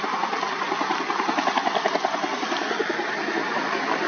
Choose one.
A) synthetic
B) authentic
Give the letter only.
B